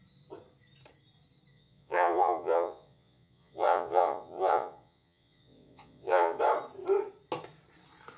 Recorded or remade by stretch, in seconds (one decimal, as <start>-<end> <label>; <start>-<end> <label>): 0.0-1.5 recorded; 1.5-6.4 remade; 6.4-8.2 recorded